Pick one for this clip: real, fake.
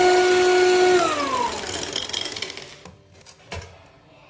real